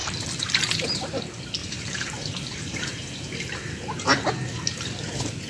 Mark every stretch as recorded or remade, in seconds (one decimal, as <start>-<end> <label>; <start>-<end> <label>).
0.0-1.2 remade; 1.2-1.6 recorded; 1.6-4.1 remade; 4.1-4.5 recorded; 4.5-5.0 remade; 5.0-5.5 recorded